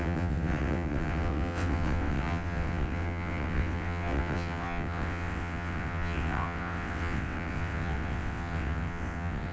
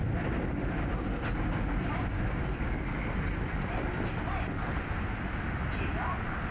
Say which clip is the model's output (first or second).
first